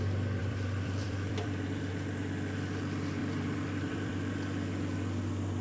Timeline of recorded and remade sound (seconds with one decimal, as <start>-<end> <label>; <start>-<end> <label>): 0.0-0.4 recorded; 0.4-1.9 remade; 1.9-3.2 recorded; 3.2-4.3 remade; 4.3-5.6 recorded